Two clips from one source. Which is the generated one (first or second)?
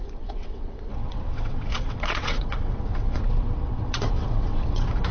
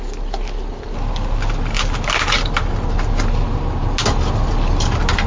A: first